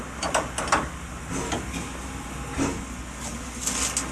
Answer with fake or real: real